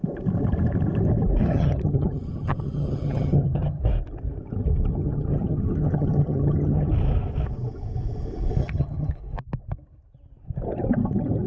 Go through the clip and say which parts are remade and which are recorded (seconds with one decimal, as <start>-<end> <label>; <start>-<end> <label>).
0.0-1.4 recorded; 1.4-3.8 remade; 3.8-4.9 recorded; 4.9-6.9 remade; 6.9-8.6 recorded; 8.6-9.1 remade; 9.1-11.5 recorded